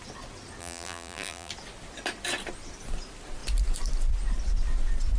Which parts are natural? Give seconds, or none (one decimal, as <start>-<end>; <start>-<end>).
0.0-0.6; 1.5-5.2